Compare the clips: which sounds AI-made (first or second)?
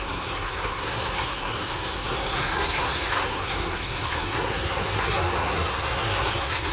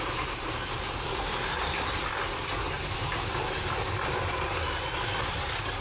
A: first